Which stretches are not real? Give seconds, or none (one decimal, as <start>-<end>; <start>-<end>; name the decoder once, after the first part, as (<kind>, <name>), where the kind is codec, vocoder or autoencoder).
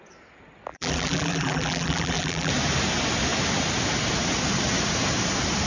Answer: 0.7-2.5 (vocoder, BigVGAN v2)